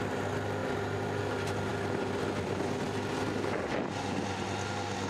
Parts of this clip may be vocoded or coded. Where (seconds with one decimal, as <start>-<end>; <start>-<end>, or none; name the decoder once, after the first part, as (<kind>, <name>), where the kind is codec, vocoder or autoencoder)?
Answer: none